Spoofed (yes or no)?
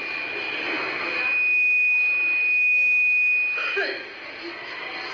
no